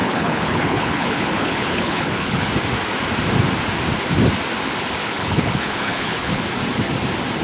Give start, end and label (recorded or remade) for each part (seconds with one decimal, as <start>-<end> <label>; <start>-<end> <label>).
0.0-2.5 remade; 2.5-5.0 recorded; 5.0-6.4 remade; 6.4-7.4 recorded